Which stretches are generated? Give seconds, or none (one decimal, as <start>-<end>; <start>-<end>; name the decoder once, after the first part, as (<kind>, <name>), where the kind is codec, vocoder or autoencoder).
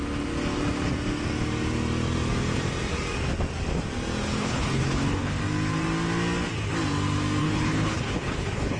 4.4-5.4 (codec, HILCodec); 7.4-8.8